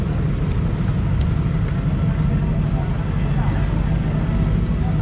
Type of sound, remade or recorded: recorded